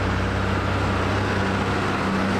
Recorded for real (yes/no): yes